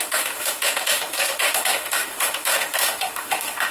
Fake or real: fake